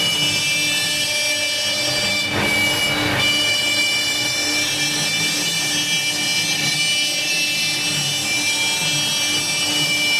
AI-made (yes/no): no